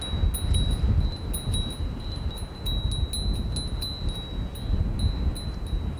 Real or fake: real